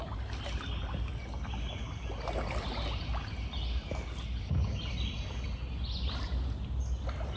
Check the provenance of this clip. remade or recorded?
recorded